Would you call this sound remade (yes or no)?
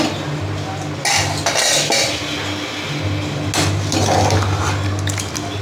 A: no